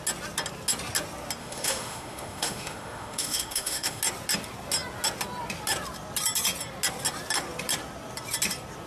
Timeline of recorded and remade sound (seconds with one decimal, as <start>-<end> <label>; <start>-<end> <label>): 0.0-1.4 recorded; 1.4-4.0 remade; 4.0-8.9 recorded